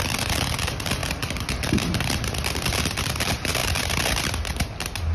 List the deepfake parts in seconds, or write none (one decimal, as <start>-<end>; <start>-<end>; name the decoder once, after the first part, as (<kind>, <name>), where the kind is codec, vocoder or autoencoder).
none